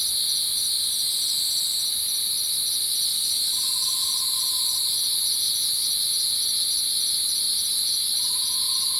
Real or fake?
real